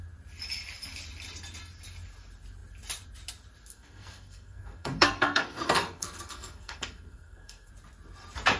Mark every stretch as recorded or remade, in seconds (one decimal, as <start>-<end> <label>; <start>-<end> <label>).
0.0-3.7 recorded; 3.7-7.7 remade; 7.7-8.6 recorded